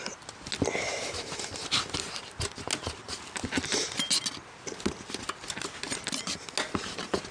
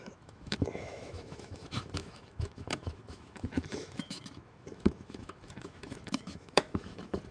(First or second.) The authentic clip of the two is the first